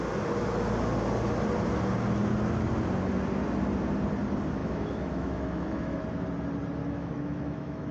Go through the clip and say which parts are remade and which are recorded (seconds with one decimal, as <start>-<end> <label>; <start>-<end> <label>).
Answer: 0.0-4.6 recorded; 4.6-6.0 remade; 6.0-6.8 recorded; 6.8-7.9 remade